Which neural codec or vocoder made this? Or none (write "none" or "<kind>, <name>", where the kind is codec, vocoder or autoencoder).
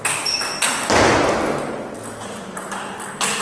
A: none